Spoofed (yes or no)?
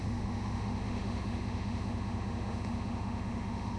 yes